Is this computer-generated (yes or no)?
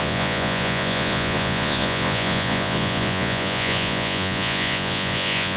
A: yes